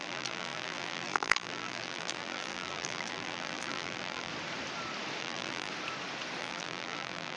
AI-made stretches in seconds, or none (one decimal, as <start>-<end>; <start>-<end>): 0.0-4.3; 5.2-5.7; 6.4-7.4